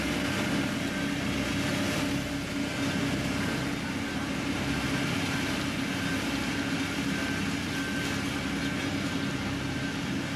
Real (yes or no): yes